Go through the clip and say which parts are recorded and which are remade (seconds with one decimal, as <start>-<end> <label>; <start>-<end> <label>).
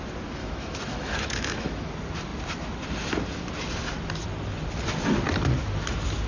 0.0-0.4 recorded; 0.4-1.9 remade; 1.9-6.3 recorded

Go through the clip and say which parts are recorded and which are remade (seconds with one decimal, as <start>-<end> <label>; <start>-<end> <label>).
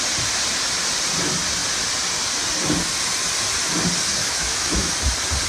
0.0-4.2 recorded; 4.2-4.9 remade; 4.9-5.5 recorded